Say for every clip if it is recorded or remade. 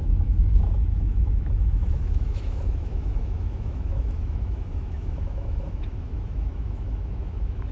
remade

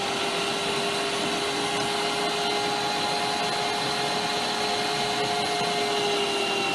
recorded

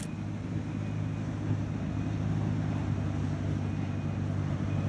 recorded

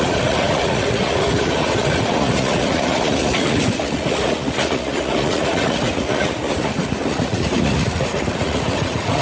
remade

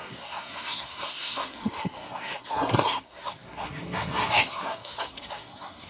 remade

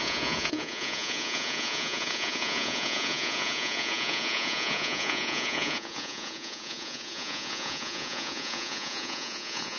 remade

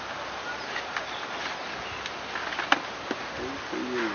recorded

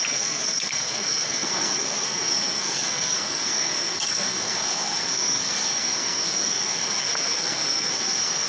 remade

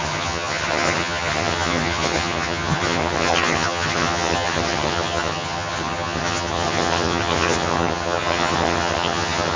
remade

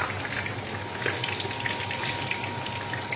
recorded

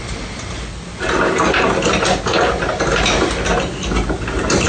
recorded